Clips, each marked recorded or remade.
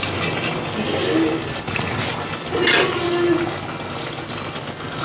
recorded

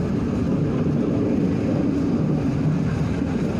recorded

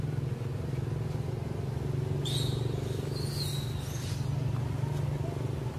recorded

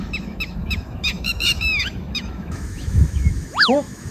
remade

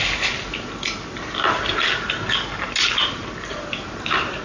recorded